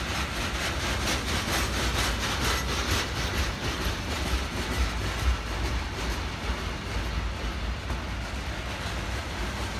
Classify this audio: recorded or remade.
recorded